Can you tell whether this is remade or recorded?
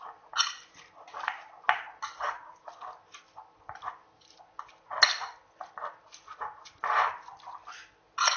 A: recorded